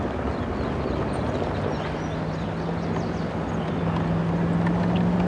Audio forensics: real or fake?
real